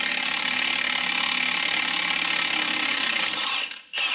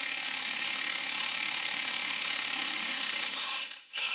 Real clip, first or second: first